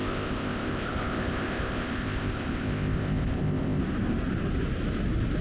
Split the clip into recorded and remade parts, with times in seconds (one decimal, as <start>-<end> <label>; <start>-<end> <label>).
0.0-3.8 remade; 3.8-5.4 recorded